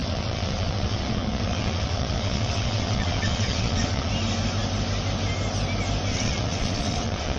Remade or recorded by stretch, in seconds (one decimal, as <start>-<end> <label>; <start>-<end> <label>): 0.0-4.1 remade; 4.1-6.1 recorded; 6.1-7.4 remade